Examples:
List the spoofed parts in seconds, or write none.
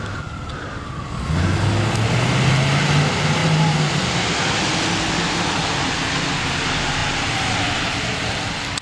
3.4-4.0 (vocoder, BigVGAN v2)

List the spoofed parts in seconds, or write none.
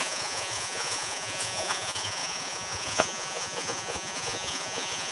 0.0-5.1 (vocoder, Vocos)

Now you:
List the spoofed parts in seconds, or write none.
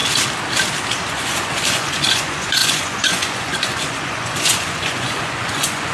1.1-5.9 (vocoder, Vocos)